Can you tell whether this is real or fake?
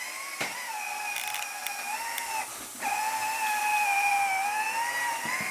real